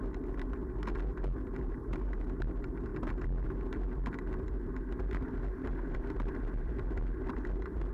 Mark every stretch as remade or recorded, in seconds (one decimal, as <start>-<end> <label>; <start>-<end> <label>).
0.0-7.9 recorded